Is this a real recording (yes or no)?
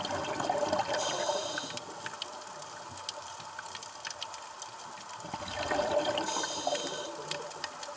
yes